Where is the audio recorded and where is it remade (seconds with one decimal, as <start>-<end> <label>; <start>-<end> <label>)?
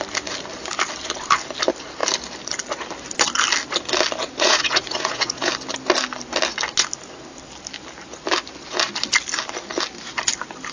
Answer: 0.0-4.2 recorded; 4.2-5.5 remade; 5.5-10.7 recorded